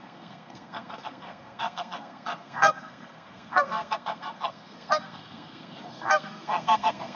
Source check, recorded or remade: remade